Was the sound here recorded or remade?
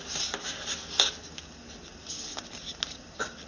recorded